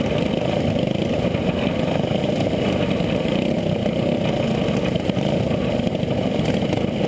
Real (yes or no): yes